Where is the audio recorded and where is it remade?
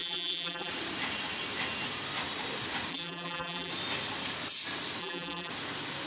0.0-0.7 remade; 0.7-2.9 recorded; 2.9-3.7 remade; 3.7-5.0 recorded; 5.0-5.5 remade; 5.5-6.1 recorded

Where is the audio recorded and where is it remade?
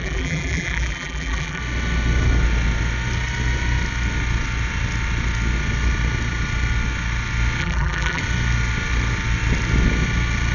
0.0-1.6 remade; 1.6-7.6 recorded; 7.6-8.2 remade; 8.2-10.5 recorded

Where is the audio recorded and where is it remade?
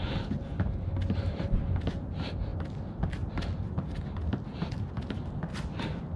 0.0-0.5 recorded; 0.5-1.6 remade; 1.6-6.2 recorded